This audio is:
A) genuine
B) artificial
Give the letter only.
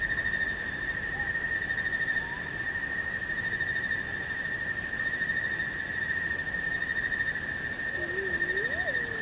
A